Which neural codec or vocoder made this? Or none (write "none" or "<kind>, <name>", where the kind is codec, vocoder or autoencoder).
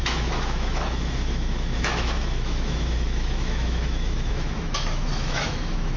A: autoencoder, DAC-VAE